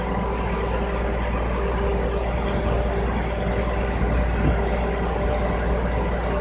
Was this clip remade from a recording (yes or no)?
no